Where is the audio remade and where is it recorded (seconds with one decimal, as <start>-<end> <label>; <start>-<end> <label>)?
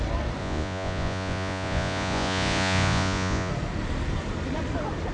0.0-0.4 recorded; 0.4-3.5 remade; 3.5-5.1 recorded